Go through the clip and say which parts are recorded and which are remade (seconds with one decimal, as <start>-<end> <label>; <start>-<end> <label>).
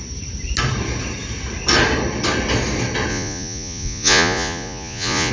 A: 0.0-3.1 recorded; 3.1-5.3 remade